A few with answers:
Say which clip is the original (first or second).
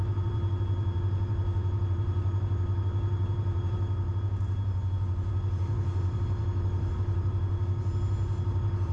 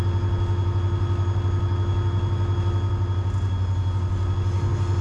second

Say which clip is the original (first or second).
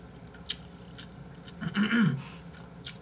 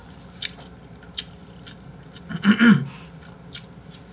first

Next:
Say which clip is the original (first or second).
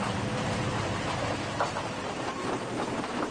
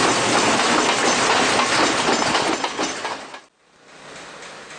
second